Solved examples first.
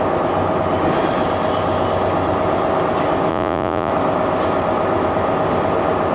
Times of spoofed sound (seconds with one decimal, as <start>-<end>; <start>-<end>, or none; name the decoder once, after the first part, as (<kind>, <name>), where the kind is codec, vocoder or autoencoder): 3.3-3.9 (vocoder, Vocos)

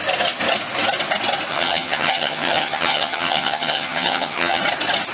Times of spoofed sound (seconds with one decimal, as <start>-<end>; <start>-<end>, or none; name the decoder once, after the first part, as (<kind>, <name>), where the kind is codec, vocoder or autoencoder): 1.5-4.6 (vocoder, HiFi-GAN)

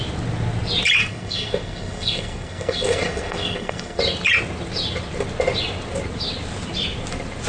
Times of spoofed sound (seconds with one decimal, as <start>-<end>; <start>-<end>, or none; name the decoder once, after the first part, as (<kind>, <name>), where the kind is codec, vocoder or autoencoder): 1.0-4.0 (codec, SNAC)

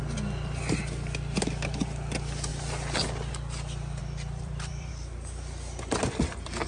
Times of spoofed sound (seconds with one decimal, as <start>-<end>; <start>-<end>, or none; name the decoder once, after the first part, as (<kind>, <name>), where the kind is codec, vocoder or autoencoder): 4.0-4.9 (vocoder, BigVGAN v2)

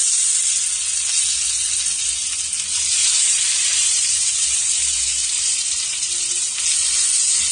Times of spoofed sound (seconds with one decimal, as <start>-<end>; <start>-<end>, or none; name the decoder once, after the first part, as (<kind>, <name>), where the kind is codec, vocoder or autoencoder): 3.0-6.6 (vocoder, BigVGAN v2)

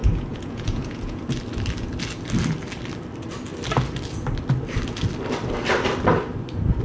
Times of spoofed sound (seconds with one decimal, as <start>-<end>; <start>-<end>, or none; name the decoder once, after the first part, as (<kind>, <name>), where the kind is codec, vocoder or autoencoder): 0.0-1.3 (vocoder, Vocos)